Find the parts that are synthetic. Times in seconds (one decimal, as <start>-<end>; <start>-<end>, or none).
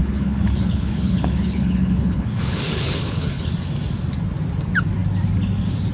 0.0-3.5